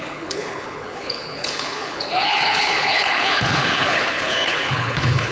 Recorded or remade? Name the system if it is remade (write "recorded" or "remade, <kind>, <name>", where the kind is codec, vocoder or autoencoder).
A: remade, codec, HILCodec